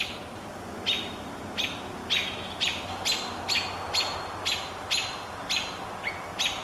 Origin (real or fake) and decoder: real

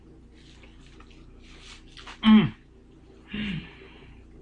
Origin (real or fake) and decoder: real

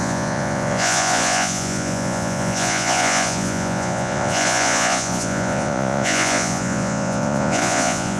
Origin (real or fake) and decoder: fake, vocoder, Vocos